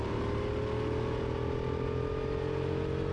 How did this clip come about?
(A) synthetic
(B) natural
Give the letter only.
B